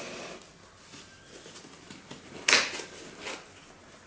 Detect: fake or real real